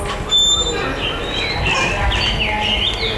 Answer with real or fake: real